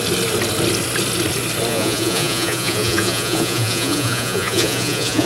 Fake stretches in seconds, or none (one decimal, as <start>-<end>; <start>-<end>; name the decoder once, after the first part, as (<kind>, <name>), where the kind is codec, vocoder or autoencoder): 1.7-5.3 (vocoder, Vocos)